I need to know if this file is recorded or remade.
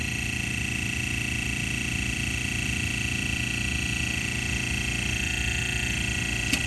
recorded